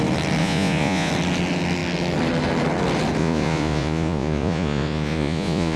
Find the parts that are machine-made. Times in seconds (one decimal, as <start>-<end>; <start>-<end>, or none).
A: 0.4-1.1; 3.2-5.8